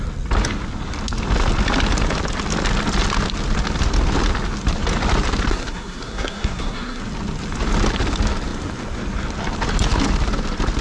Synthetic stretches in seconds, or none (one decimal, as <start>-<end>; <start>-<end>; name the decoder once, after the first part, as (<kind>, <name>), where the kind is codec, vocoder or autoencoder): 5.5-7.0 (codec, SNAC)